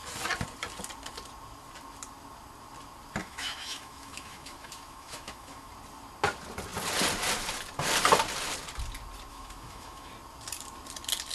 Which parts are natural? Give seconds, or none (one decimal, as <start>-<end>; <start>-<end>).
0.0-3.2; 5.7-9.3; 10.1-11.3